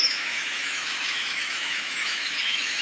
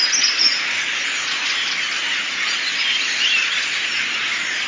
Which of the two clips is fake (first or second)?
first